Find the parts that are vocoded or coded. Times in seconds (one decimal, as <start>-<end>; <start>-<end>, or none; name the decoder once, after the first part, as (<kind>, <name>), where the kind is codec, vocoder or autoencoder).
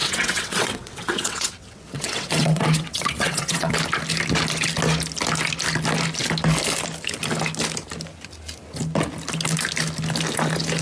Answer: 0.0-3.7 (vocoder, WaveNeXt)